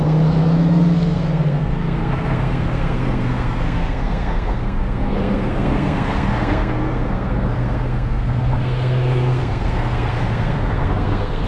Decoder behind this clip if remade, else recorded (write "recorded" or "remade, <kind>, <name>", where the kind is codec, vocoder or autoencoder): remade, codec, SNAC